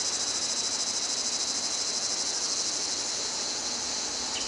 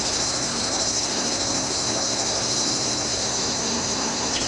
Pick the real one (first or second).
first